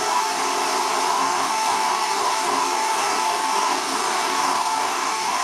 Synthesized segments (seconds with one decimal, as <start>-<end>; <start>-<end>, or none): 0.0-0.4; 1.1-5.4